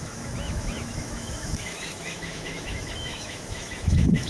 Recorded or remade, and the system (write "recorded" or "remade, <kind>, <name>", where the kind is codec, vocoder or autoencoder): remade, autoencoder, DAC-VAE